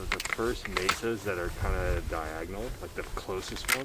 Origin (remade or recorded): recorded